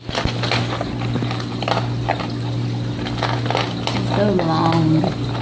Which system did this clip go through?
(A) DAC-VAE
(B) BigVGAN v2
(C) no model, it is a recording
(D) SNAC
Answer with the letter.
C